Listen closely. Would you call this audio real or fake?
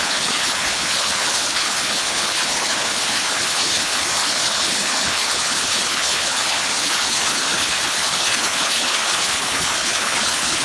fake